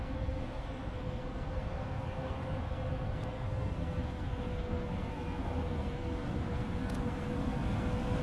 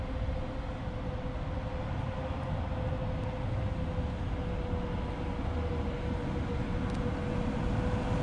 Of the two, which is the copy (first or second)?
first